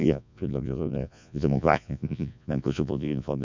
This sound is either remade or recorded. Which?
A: remade